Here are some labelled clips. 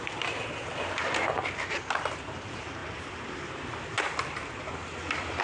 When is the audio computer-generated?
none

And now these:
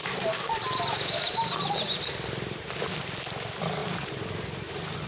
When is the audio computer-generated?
none